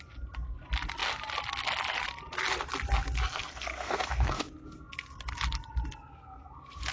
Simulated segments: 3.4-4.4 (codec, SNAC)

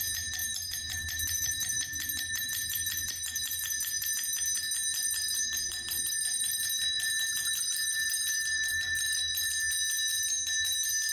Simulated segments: 0.4-4.1 (vocoder, BigVGAN v2); 4.9-9.5